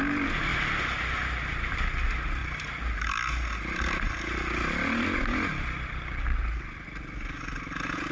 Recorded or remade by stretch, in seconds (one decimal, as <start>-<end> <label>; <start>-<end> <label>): 0.0-8.1 recorded